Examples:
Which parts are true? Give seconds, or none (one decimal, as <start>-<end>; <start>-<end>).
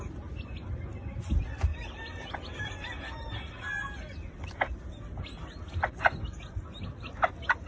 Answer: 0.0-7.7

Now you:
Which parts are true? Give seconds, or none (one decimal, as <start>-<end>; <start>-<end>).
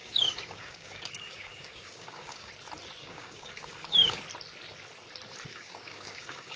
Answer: 2.5-3.0; 4.2-5.5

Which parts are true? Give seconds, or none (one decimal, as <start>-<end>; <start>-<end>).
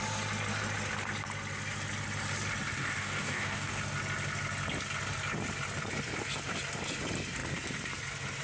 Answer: 0.0-2.8; 3.8-8.4